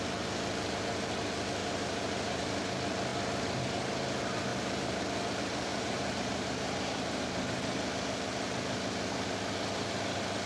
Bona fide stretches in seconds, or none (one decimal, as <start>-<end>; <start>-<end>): 0.0-1.6; 2.4-4.5; 5.0-5.7; 7.2-10.5